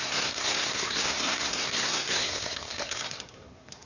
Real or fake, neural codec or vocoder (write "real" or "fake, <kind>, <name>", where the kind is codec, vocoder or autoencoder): fake, codec, SNAC